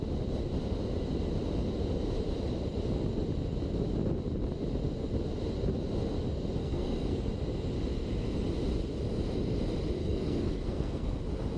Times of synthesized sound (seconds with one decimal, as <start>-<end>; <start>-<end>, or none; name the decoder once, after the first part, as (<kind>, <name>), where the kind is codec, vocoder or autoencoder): 6.6-7.2 (codec, SNAC); 10.0-11.2